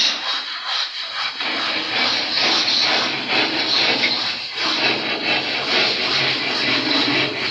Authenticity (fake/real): real